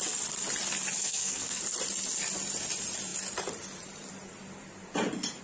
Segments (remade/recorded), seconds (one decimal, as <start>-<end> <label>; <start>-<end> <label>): 0.0-1.0 recorded; 1.0-1.6 remade; 1.6-5.4 recorded